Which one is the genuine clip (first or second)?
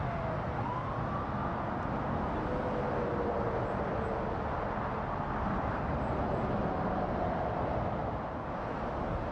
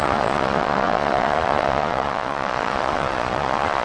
first